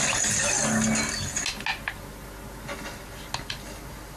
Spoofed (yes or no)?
no